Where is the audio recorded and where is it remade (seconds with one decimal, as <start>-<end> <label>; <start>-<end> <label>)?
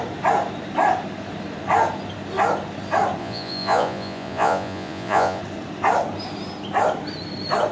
0.0-3.2 recorded; 3.2-5.4 remade; 5.4-7.7 recorded